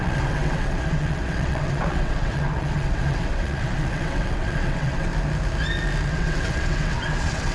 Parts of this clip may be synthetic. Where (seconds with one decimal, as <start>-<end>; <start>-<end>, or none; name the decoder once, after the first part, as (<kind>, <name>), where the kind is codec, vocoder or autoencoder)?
0.0-5.1 (vocoder, WaveNeXt); 6.1-7.5